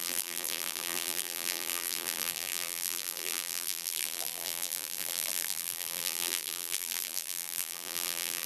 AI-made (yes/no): yes